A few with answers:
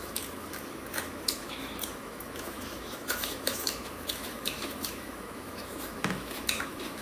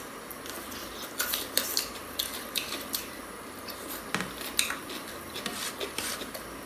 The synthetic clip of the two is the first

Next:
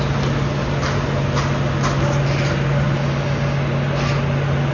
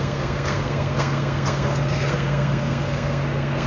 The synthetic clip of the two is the second